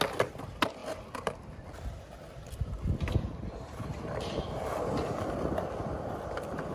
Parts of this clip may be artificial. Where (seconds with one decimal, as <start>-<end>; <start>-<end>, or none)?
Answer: 0.8-4.8